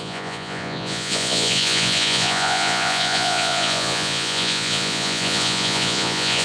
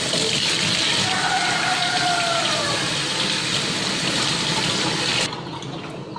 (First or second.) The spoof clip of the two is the first